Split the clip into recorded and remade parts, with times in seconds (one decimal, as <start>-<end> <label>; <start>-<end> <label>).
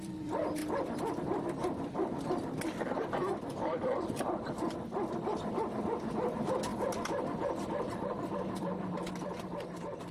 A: 0.0-0.6 remade; 0.6-1.2 recorded; 1.2-10.1 remade